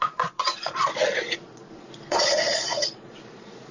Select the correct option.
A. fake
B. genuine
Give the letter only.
A